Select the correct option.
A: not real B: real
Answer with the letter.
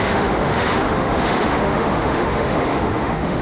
A